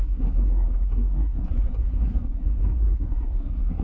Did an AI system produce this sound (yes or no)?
yes